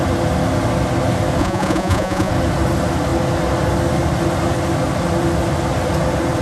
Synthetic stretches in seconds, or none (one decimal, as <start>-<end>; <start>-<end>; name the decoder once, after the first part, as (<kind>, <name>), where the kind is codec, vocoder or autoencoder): 1.4-2.3 (vocoder, Vocos)